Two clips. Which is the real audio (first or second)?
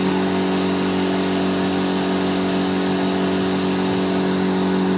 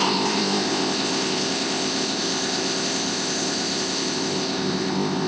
first